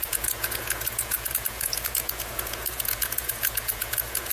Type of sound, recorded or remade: remade